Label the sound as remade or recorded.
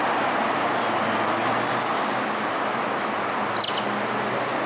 recorded